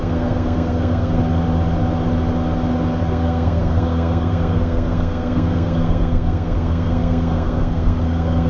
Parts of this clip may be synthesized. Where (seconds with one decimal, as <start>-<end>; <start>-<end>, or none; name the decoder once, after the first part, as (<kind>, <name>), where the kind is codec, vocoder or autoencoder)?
0.0-1.2 (codec, SNAC); 3.0-8.5